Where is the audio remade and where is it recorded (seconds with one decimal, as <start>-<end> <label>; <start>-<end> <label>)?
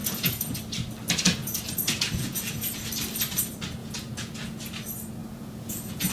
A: 0.0-0.6 remade; 0.6-1.4 recorded; 1.4-2.9 remade; 2.9-3.8 recorded; 3.8-4.6 remade; 4.6-5.2 recorded; 5.2-6.1 remade